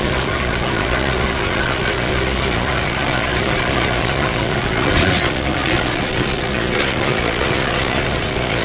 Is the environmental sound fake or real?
fake